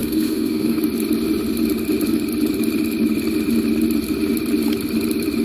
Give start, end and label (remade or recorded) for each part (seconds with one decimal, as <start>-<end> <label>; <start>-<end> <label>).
0.0-0.8 remade; 0.8-5.4 recorded